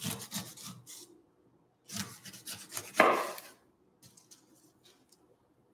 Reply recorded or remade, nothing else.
recorded